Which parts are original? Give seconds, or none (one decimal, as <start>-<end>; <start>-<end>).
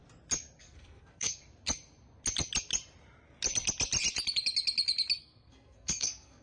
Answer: 0.0-0.6; 1.4-5.2